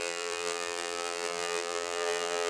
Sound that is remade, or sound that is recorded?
remade